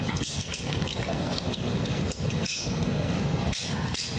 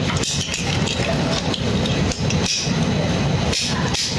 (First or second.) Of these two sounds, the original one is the second